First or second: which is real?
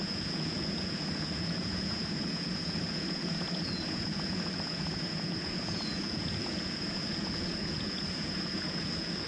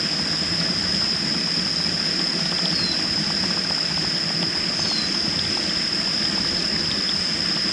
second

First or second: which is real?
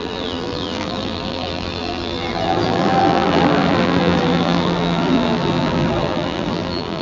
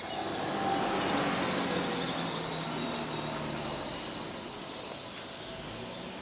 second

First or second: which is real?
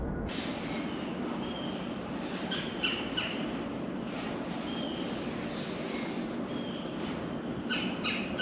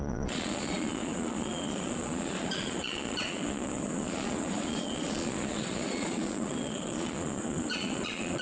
first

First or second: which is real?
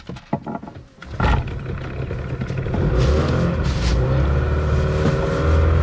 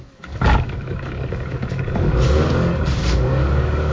first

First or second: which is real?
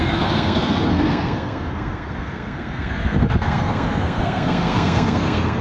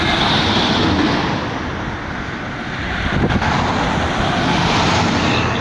second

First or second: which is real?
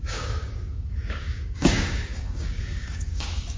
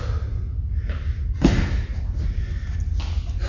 second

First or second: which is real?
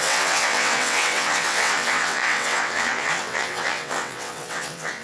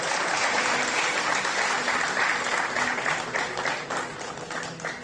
second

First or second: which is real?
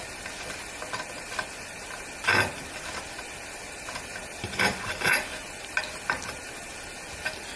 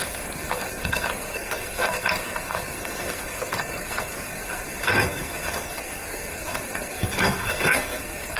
first